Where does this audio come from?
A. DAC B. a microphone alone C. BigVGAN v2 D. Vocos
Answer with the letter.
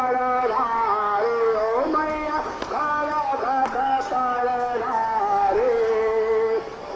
A